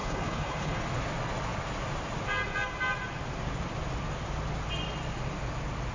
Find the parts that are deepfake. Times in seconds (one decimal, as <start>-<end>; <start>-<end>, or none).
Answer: 0.0-0.8